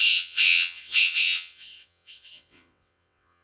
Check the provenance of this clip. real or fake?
fake